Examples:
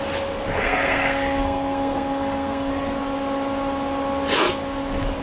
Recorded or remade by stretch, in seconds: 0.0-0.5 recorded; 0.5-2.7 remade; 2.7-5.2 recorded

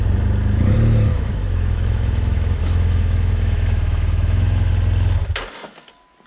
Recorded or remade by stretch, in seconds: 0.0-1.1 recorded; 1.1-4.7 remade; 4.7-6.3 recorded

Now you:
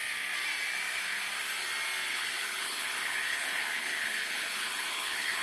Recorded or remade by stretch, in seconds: 0.0-2.1 recorded; 2.1-5.4 remade